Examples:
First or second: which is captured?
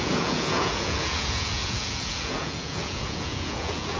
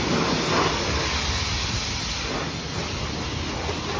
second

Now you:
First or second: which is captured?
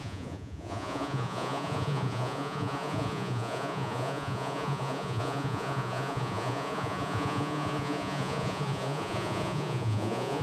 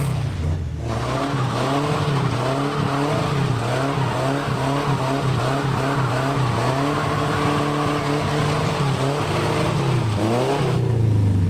second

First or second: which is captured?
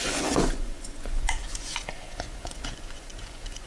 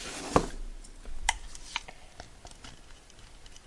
second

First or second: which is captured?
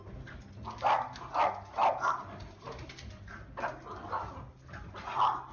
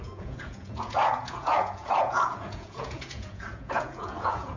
first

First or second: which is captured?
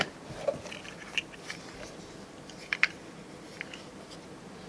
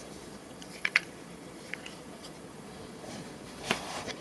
first